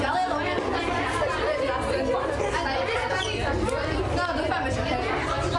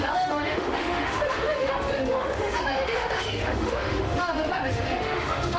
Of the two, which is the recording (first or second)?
first